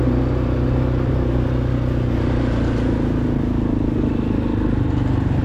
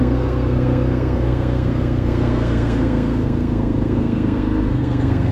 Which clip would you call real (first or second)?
first